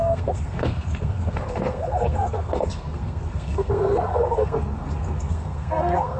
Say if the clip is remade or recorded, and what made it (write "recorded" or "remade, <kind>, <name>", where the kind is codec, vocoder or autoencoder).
remade, codec, SNAC